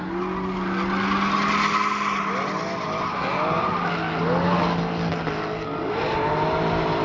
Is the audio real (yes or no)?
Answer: yes